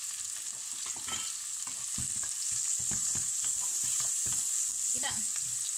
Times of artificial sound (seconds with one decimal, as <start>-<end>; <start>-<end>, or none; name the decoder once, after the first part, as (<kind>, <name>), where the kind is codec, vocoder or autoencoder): 3.0-4.4 (vocoder, BigVGAN v2)